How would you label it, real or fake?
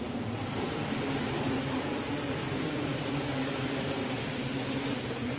fake